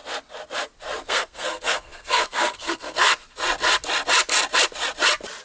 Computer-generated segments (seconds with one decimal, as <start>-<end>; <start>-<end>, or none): 1.1-3.1